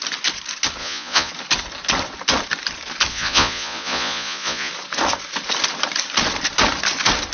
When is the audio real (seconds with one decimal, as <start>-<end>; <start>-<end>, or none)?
0.0-0.8; 1.3-3.1; 4.7-7.3